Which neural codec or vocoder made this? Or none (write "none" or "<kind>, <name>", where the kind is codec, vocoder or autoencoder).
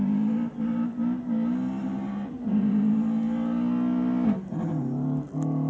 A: none